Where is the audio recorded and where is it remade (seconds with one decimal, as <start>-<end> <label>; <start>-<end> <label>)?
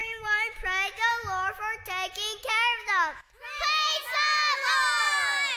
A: 0.0-1.1 remade; 1.1-2.5 recorded; 2.5-3.6 remade; 3.6-5.6 recorded